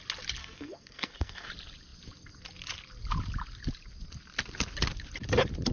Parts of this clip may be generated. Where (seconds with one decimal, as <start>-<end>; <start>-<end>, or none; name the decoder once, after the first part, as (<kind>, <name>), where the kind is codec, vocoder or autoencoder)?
0.4-1.5 (codec, SNAC)